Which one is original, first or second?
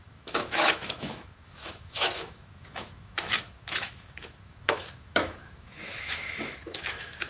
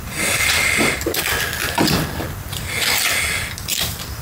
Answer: second